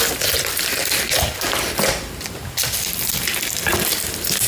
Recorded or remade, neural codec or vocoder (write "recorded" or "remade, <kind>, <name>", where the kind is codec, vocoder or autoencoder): recorded